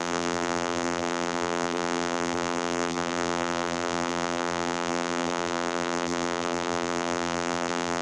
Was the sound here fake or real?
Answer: fake